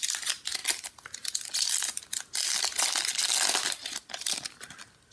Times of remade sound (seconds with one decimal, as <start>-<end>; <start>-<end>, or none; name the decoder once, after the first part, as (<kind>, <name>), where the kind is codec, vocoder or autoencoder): none